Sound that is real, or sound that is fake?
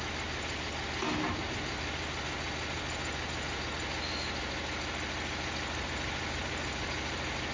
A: real